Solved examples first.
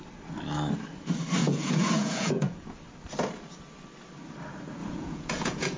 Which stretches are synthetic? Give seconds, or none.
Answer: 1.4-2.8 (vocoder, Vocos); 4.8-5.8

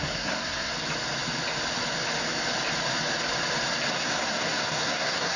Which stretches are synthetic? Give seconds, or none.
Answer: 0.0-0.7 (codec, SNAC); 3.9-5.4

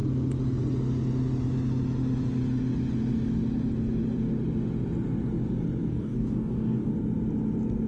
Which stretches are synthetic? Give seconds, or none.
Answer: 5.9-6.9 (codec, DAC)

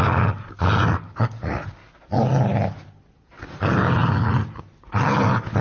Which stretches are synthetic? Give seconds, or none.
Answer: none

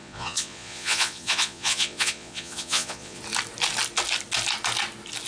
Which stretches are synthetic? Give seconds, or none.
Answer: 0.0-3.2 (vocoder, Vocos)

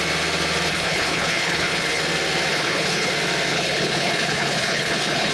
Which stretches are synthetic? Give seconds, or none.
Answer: 0.7-2.0 (codec, HILCodec); 2.5-3.1; 3.5-5.3